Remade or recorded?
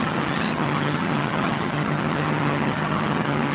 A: remade